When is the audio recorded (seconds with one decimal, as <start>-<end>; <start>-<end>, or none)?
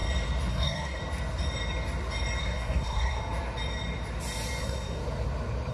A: 0.0-0.5; 1.0-2.4; 3.2-4.6; 5.0-5.7